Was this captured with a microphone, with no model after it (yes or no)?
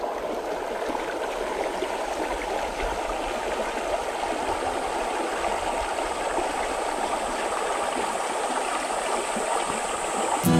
yes